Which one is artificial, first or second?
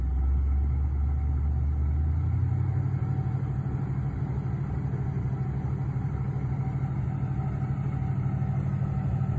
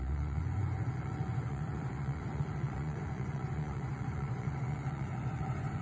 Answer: second